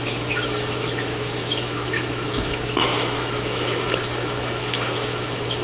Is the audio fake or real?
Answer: fake